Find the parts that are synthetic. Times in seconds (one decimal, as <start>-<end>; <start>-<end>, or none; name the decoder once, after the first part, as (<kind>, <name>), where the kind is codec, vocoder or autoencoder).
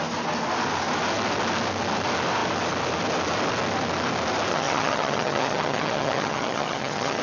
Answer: 4.5-7.2 (vocoder, HiFi-GAN)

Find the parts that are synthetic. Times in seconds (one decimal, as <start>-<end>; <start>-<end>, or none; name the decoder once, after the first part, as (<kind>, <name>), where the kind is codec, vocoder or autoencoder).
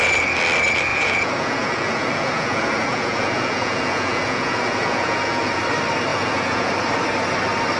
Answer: 0.9-5.6 (vocoder, Vocos); 6.1-6.7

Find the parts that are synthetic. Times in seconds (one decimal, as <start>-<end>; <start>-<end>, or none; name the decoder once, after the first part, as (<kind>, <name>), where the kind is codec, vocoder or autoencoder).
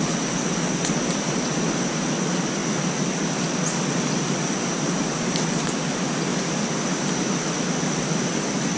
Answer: none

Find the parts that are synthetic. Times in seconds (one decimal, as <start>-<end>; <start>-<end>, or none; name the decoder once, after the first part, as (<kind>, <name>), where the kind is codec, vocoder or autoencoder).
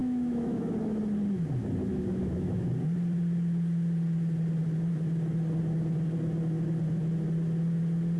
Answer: 0.0-0.7 (autoencoder, DAC-VAE); 1.9-2.7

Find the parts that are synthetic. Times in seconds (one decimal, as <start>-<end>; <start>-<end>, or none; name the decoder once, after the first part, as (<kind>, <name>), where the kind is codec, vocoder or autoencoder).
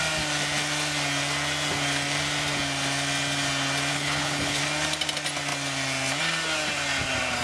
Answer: 3.9-4.6 (codec, HILCodec)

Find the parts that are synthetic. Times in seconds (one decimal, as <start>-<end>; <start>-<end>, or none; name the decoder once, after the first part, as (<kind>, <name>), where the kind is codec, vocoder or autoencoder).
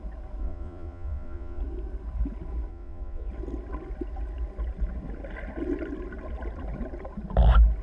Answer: 0.4-1.6 (vocoder, Vocos); 2.7-3.3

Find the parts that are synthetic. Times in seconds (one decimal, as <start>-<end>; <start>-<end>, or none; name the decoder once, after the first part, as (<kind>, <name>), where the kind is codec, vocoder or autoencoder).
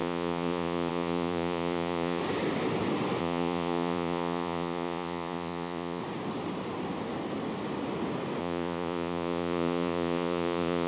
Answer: 0.0-2.2 (vocoder, Vocos); 3.2-6.0; 8.4-10.9